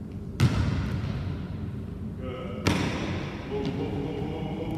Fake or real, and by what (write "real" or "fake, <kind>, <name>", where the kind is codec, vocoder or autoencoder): real